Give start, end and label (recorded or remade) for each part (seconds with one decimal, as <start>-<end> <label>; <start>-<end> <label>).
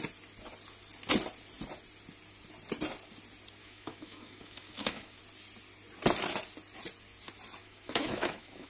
0.0-3.6 recorded; 3.6-5.2 remade; 5.2-7.6 recorded; 7.6-8.7 remade